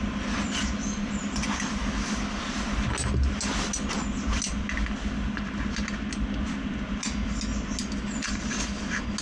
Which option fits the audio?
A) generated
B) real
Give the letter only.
B